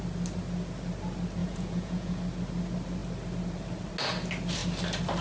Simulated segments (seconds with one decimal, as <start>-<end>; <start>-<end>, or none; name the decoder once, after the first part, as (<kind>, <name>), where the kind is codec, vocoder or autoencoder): 1.4-2.2 (vocoder, Vocos)